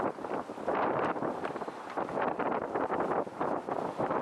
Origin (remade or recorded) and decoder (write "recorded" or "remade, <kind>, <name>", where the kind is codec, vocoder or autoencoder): recorded